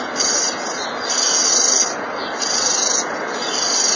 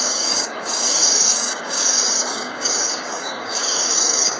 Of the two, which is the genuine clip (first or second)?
first